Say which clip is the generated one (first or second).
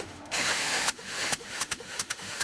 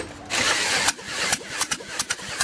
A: first